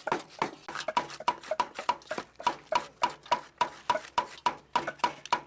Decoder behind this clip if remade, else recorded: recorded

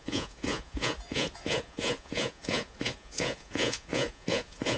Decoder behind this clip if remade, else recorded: remade, vocoder, Vocos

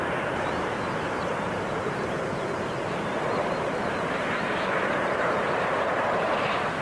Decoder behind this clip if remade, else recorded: remade, vocoder, BigVGAN v2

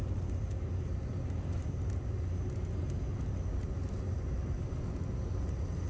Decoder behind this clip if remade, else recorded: recorded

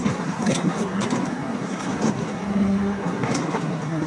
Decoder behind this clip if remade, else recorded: remade, codec, SNAC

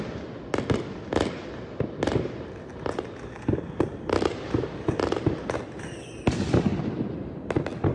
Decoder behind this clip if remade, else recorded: recorded